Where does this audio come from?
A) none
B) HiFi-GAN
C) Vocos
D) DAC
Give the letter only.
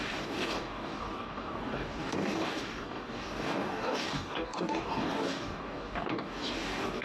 D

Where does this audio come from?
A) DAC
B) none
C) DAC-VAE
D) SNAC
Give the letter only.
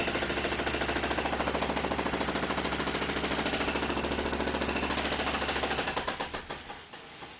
B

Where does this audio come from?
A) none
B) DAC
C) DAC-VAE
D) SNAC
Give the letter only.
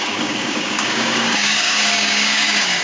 B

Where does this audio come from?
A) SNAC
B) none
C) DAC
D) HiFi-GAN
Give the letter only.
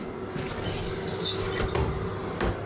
B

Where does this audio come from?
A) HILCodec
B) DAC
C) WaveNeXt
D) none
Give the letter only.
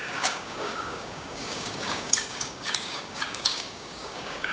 B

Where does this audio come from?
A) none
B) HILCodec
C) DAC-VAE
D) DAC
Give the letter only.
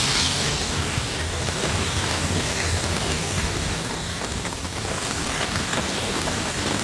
D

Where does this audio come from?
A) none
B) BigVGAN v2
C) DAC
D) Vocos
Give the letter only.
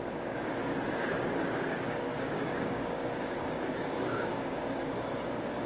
C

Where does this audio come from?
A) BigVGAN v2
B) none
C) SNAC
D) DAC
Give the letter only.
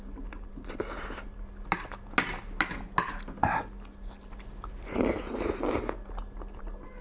B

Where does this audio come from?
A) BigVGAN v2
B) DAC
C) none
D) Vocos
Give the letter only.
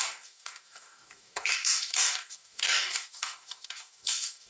B